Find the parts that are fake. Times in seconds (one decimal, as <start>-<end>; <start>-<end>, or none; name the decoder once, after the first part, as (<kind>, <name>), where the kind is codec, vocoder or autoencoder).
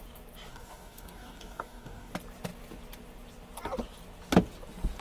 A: 0.5-2.1 (codec, DAC)